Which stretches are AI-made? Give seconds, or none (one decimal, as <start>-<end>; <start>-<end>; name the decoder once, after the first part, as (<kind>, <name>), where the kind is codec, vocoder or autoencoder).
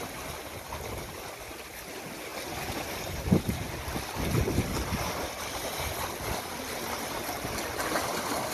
none